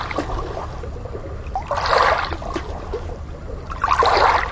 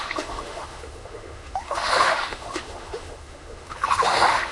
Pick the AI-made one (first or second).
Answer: second